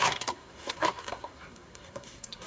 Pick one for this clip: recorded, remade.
remade